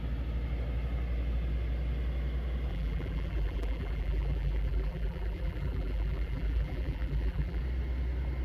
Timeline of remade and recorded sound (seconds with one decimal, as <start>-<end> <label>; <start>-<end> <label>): 0.0-2.7 recorded; 2.7-7.6 remade; 7.6-8.4 recorded